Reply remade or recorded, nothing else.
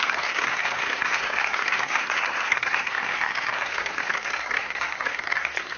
remade